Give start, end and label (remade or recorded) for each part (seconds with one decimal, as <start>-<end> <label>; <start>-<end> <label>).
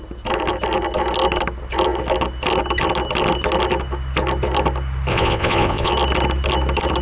0.0-5.1 recorded; 5.1-5.9 remade; 5.9-7.0 recorded